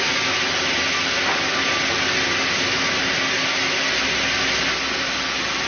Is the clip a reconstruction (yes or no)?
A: no